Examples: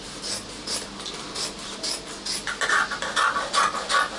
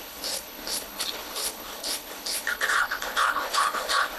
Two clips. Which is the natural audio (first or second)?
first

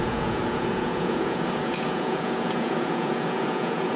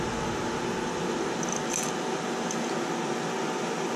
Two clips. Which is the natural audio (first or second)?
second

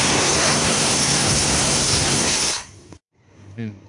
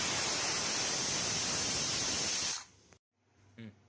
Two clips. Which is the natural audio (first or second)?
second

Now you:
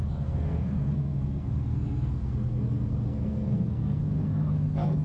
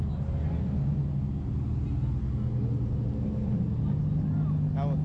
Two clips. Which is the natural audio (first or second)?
second